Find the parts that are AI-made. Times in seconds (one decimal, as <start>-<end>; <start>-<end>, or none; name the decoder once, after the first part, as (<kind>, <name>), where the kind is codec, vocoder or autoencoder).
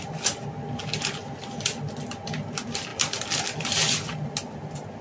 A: none